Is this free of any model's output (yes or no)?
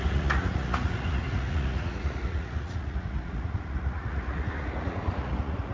no